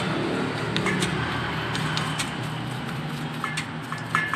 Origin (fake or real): real